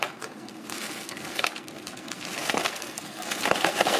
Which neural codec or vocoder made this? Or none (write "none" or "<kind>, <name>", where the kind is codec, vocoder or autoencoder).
codec, SNAC